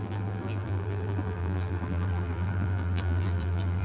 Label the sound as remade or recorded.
remade